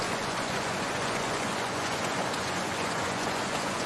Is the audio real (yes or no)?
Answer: no